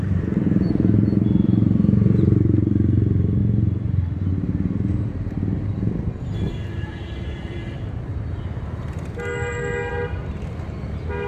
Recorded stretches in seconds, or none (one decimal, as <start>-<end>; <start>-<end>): 3.4-5.0; 8.1-9.9